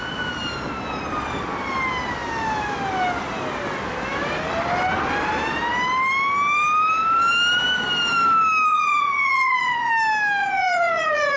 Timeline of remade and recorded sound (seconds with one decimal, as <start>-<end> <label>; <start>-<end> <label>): 0.0-8.7 recorded; 8.7-9.9 remade; 9.9-10.4 recorded; 10.4-11.4 remade